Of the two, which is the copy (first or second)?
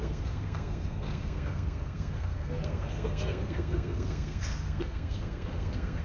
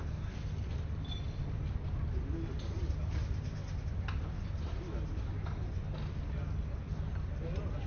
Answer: first